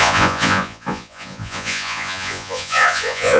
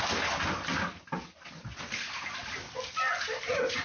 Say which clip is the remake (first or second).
first